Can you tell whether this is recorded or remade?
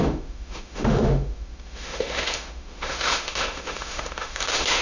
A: remade